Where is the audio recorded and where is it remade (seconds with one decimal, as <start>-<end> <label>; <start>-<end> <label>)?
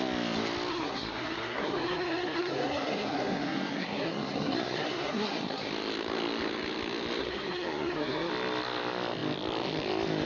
0.0-0.7 recorded; 0.7-5.7 remade; 5.7-7.2 recorded; 7.2-8.3 remade; 8.3-10.3 recorded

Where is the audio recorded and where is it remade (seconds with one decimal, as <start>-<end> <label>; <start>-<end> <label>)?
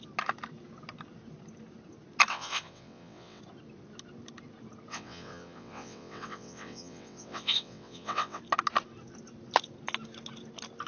0.0-2.3 recorded; 2.3-3.4 remade; 3.4-4.9 recorded; 4.9-8.4 remade; 8.4-10.9 recorded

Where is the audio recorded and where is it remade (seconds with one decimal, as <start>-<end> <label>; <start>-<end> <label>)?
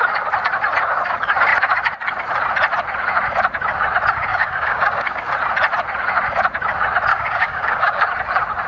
0.0-4.3 recorded; 4.3-5.3 remade; 5.3-7.1 recorded; 7.1-8.0 remade; 8.0-8.7 recorded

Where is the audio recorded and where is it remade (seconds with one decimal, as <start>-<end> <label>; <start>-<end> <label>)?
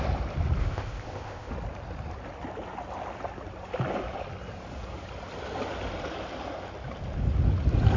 0.0-0.6 recorded; 0.6-1.5 remade; 1.5-8.0 recorded